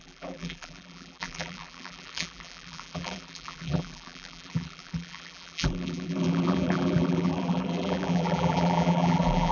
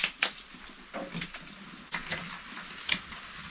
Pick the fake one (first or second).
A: first